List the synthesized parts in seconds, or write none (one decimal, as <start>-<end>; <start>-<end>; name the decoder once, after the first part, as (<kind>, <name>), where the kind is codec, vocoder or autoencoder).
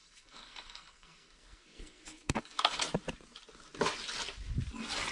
0.0-2.8 (codec, SNAC)